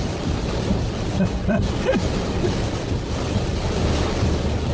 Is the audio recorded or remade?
recorded